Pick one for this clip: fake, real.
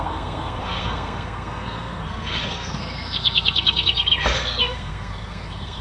fake